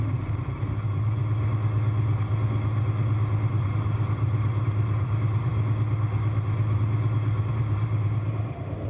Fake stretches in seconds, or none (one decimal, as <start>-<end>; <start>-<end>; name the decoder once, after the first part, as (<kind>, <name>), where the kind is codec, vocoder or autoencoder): 0.0-1.2 (vocoder, BigVGAN v2); 3.5-5.5; 7.5-8.9